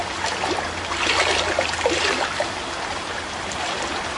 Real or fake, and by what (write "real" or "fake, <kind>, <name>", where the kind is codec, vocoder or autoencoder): real